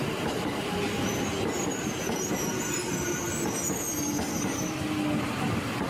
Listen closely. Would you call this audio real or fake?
real